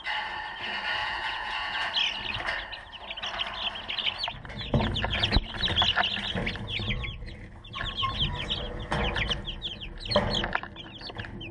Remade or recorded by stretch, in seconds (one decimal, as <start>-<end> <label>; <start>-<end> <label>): 0.0-1.0 recorded; 1.0-1.9 remade; 1.9-11.5 recorded